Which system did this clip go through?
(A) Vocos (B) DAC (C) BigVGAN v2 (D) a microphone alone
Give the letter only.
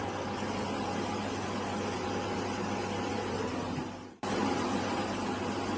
D